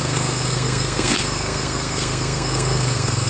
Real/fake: fake